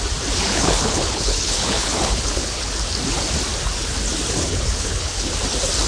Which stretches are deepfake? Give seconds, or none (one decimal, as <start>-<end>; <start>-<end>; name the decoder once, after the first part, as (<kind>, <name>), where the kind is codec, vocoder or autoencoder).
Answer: 0.5-2.7 (codec, HILCodec); 4.5-5.3